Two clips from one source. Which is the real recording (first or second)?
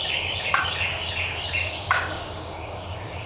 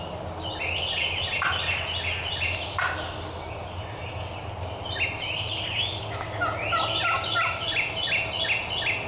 second